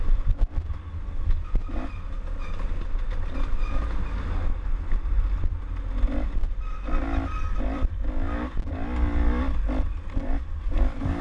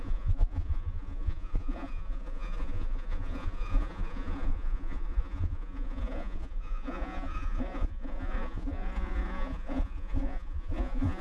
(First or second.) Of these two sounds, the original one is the first